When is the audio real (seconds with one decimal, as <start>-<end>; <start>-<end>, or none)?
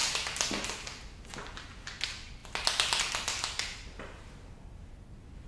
0.0-5.5